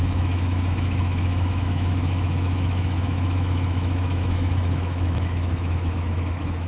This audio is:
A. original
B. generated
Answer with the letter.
B